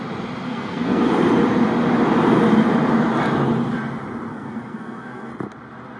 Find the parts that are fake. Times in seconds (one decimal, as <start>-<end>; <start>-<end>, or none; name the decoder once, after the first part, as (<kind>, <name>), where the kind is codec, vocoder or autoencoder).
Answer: 0.5-1.1 (codec, SNAC); 4.3-5.3